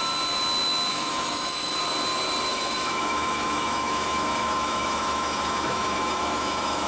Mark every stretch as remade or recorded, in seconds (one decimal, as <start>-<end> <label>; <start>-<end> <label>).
0.0-0.9 recorded; 0.9-1.8 remade; 1.8-2.5 recorded; 2.5-6.9 remade